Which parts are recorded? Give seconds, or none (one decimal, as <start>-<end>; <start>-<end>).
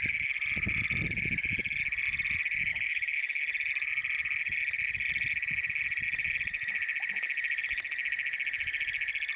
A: 0.0-2.7; 3.4-9.4